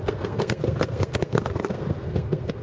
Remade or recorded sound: remade